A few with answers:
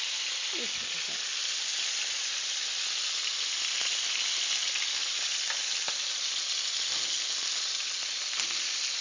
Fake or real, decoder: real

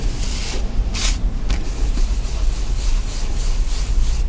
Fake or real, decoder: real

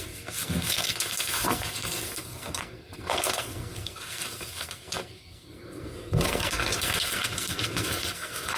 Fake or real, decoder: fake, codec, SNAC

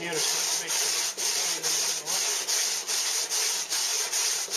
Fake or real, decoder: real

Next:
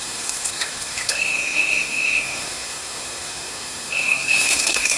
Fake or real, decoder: fake, codec, SNAC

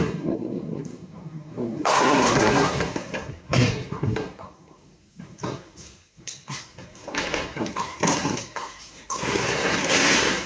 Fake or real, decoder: fake, codec, SNAC